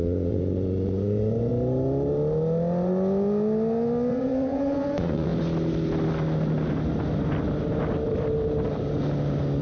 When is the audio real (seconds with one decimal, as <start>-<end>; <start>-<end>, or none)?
1.5-4.1; 5.3-9.6